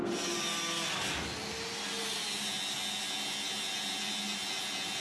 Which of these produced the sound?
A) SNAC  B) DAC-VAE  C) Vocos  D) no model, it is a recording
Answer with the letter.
D